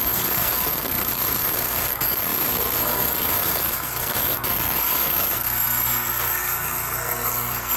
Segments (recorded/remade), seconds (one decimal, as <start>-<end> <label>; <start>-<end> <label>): 0.0-7.8 remade

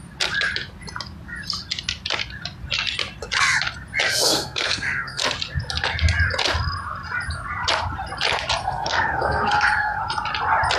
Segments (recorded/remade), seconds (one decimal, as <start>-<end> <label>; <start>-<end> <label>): 0.0-4.1 recorded; 4.1-5.2 remade; 5.2-8.6 recorded; 8.6-10.0 remade; 10.0-10.8 recorded

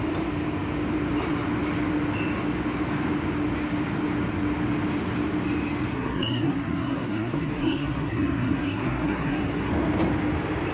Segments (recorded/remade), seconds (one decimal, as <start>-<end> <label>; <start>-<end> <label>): 0.0-5.9 recorded; 5.9-9.7 remade; 9.7-10.7 recorded